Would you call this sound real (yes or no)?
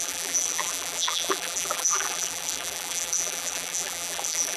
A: no